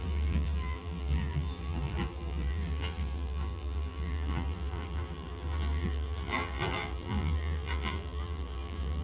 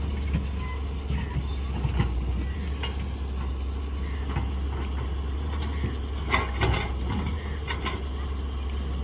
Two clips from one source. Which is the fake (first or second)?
first